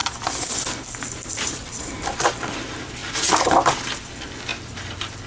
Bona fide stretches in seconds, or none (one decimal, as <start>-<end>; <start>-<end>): 2.6-3.0; 3.7-4.5